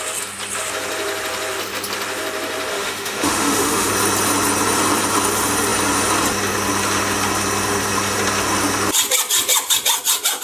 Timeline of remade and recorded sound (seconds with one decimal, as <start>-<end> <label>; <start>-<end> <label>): 0.0-2.7 recorded; 2.7-3.9 remade; 3.9-10.4 recorded